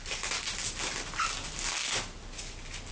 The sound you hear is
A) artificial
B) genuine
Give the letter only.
B